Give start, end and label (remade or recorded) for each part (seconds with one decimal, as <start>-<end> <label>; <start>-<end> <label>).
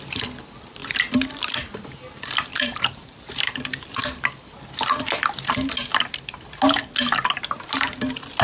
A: 0.0-2.5 recorded; 2.5-3.5 remade; 3.5-8.4 recorded